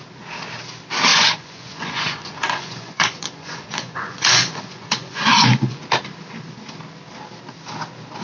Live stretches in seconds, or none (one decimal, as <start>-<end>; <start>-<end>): 0.0-1.1; 5.8-8.2